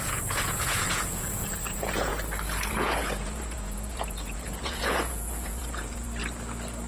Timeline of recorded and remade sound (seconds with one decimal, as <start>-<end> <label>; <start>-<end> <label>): 0.0-2.1 remade; 2.1-2.7 recorded; 2.7-6.2 remade; 6.2-6.9 recorded